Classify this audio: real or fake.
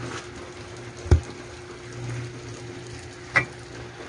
real